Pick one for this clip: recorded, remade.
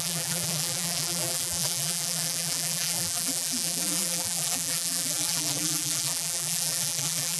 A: remade